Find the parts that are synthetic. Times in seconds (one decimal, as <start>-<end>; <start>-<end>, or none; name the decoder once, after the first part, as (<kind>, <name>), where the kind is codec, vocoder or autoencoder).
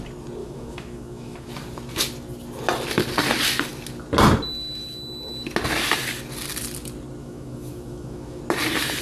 0.4-1.5 (autoencoder, DAC-VAE); 7.2-8.4